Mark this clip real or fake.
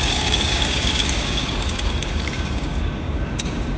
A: fake